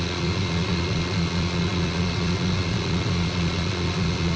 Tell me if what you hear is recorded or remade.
remade